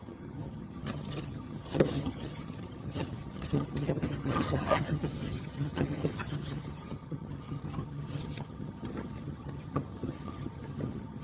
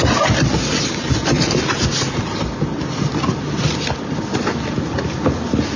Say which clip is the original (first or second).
second